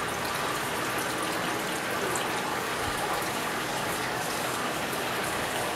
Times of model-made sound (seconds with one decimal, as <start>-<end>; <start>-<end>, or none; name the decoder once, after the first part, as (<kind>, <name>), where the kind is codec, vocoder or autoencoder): 2.5-5.8 (codec, DAC)